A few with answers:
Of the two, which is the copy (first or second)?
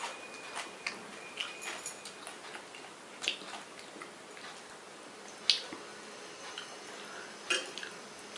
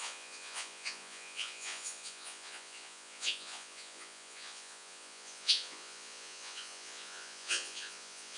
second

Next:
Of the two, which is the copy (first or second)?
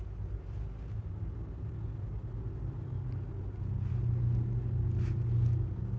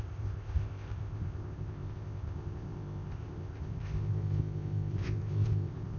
second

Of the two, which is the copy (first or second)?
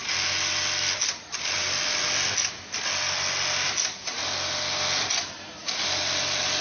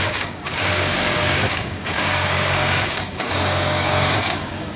second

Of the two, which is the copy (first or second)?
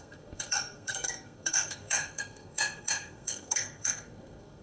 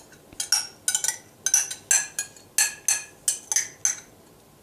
first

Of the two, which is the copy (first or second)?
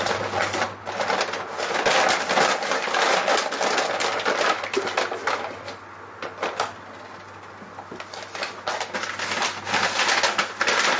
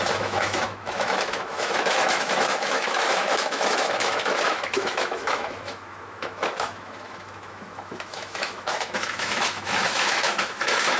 second